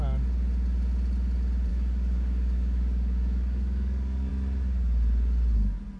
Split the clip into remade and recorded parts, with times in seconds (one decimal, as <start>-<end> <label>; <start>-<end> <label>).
0.0-1.7 recorded; 1.7-4.3 remade; 4.3-6.0 recorded